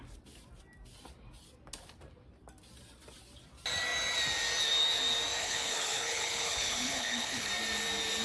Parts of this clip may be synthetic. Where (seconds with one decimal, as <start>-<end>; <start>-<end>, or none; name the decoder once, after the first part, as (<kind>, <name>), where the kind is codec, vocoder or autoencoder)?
5.4-7.5 (codec, HILCodec)